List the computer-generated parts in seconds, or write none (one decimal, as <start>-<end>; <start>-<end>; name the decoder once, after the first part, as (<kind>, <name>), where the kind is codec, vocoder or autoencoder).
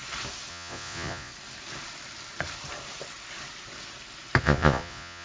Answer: 0.5-1.3 (vocoder, Vocos); 4.4-5.2